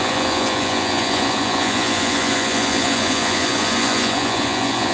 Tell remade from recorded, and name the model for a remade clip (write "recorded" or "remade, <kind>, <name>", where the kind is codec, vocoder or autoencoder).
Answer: remade, vocoder, Vocos